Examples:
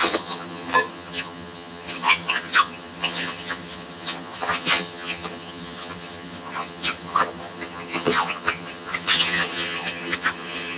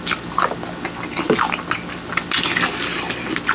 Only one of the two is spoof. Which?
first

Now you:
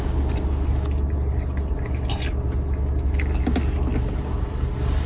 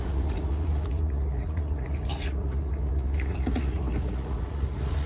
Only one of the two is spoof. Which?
second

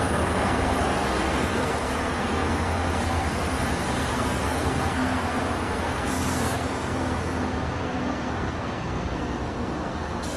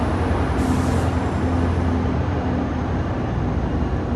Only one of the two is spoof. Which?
first